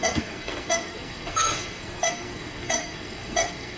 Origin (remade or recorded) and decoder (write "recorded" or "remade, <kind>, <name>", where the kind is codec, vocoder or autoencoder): remade, codec, SNAC